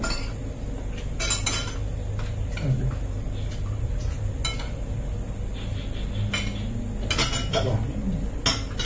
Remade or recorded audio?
recorded